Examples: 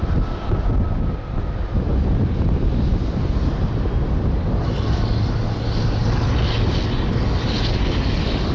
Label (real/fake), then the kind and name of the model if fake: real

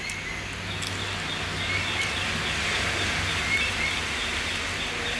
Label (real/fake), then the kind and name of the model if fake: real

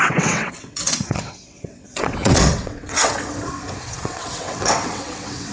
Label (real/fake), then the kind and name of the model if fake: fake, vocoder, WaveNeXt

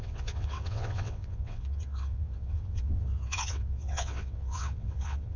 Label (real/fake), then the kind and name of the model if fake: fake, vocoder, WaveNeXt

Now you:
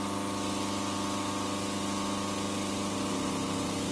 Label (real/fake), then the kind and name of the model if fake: real